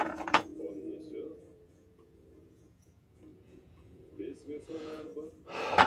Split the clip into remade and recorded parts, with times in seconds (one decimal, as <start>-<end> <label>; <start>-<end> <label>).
0.0-5.1 remade; 5.1-5.9 recorded